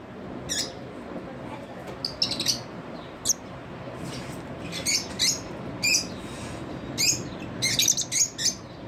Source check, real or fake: real